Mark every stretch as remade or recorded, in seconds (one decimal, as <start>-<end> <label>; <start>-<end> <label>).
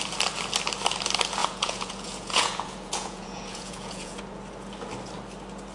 0.0-1.4 recorded; 1.4-4.2 remade; 4.2-5.7 recorded